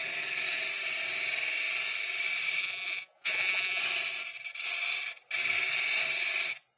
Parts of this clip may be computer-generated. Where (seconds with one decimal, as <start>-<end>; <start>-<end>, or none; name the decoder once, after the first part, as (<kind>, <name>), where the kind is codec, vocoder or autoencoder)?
2.6-3.8 (vocoder, Vocos)